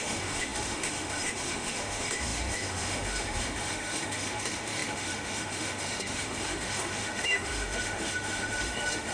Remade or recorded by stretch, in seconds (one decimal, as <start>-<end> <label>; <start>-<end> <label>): 0.0-9.1 remade